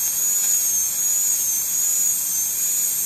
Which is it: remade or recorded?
recorded